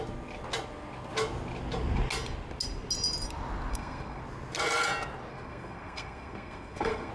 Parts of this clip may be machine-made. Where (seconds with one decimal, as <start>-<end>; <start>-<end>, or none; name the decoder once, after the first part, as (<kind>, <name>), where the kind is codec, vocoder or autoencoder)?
3.7-4.2 (codec, SNAC); 5.3-7.1